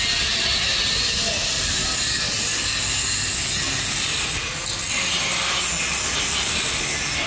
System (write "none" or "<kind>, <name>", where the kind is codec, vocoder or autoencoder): none